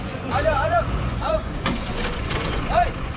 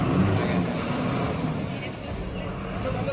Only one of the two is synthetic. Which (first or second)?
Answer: first